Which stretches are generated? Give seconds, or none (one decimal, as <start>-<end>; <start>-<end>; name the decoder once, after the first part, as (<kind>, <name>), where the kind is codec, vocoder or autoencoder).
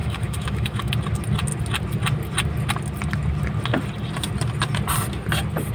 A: 0.0-0.9 (autoencoder, DAC-VAE)